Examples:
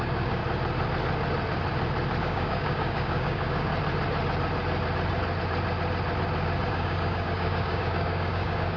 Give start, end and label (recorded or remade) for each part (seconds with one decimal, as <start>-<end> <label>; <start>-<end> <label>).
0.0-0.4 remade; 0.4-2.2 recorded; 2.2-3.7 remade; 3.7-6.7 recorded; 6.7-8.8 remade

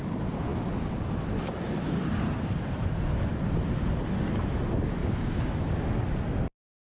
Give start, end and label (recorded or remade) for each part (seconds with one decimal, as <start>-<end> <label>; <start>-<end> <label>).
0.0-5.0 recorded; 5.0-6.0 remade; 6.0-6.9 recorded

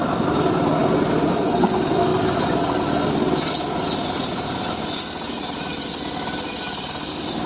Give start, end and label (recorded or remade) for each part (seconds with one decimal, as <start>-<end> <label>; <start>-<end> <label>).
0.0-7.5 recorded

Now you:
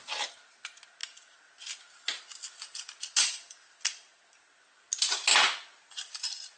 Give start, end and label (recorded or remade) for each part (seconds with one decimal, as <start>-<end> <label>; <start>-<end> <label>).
0.0-6.6 recorded

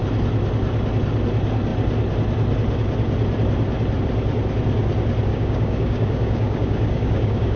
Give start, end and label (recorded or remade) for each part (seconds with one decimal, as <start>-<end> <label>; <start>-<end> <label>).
0.0-5.3 recorded; 5.3-7.6 remade

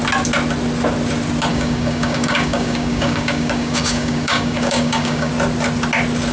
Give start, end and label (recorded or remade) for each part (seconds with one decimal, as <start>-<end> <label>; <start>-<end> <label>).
0.0-1.5 recorded; 1.5-5.3 remade; 5.3-6.3 recorded